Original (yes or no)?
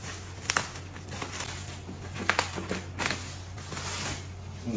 yes